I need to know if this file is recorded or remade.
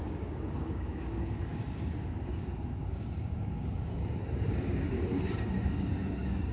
remade